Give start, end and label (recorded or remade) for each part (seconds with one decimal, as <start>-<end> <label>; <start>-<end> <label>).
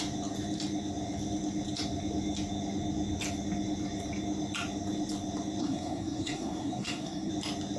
0.0-5.6 recorded; 5.6-7.3 remade; 7.3-7.8 recorded